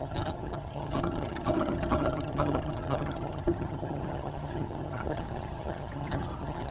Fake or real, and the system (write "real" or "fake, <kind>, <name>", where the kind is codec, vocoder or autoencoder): fake, vocoder, HiFi-GAN